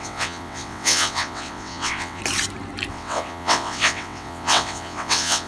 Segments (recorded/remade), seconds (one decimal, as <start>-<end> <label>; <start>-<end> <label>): 0.0-2.2 remade; 2.2-2.9 recorded; 2.9-5.5 remade